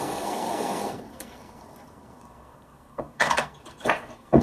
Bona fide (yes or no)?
no